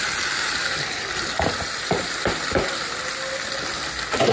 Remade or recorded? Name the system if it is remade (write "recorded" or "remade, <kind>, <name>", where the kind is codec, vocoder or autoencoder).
remade, vocoder, BigVGAN v2